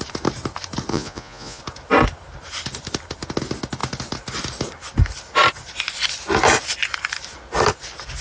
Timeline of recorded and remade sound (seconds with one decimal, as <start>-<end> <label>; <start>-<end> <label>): 0.0-0.9 recorded; 0.9-1.6 remade; 1.6-8.2 recorded